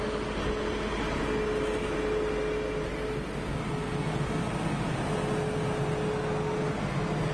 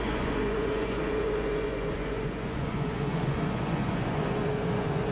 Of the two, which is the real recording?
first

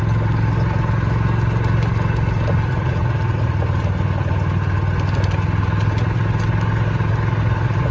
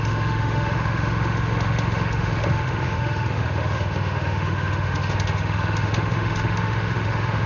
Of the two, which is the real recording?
first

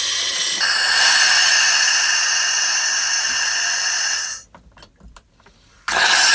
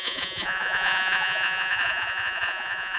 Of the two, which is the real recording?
first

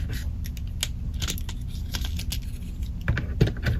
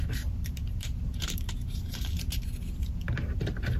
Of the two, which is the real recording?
first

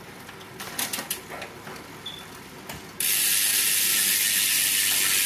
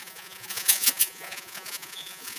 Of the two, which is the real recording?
first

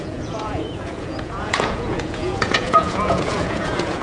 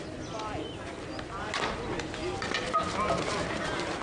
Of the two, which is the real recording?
second